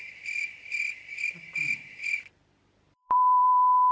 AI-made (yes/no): yes